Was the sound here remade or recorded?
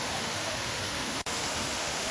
remade